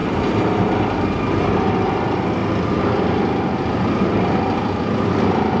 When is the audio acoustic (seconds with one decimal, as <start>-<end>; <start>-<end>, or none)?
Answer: 0.8-5.6